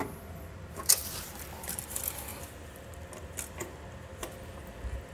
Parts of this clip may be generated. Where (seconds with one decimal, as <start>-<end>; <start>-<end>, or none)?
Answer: 1.0-1.7